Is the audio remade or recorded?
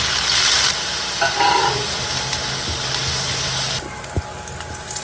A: recorded